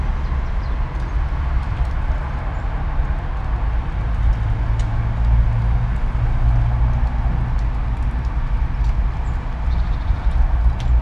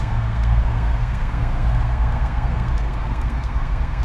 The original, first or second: first